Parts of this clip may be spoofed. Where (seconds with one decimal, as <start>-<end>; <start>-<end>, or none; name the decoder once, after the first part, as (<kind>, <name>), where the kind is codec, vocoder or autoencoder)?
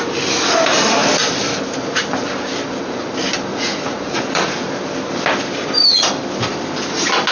3.5-4.7 (vocoder, Vocos)